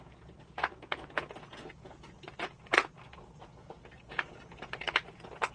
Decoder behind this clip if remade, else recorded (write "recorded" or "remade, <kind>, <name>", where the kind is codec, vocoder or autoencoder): remade, vocoder, Vocos